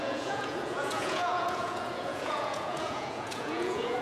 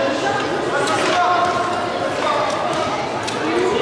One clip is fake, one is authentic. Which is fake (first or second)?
first